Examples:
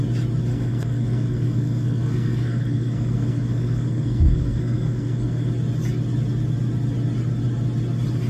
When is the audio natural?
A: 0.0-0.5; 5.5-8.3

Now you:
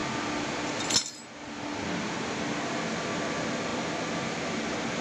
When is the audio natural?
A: 0.0-5.0

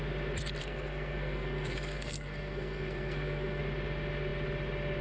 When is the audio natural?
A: 0.0-0.6; 3.6-5.0

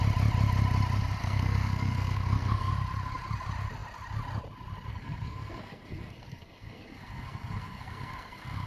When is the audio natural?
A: 0.0-1.2; 2.7-4.9